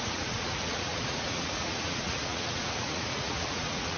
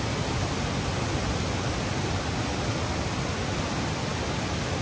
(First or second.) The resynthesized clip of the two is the first